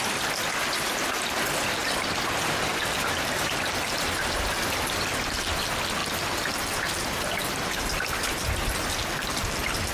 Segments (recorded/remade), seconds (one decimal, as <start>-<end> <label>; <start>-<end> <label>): 0.0-1.8 recorded; 1.8-5.4 remade; 5.4-6.0 recorded; 6.0-8.9 remade; 8.9-9.9 recorded